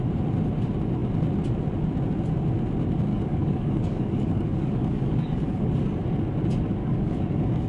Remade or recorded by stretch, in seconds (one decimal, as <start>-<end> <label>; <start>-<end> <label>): 0.0-3.1 recorded; 3.1-5.7 remade; 5.7-6.8 recorded; 6.8-7.7 remade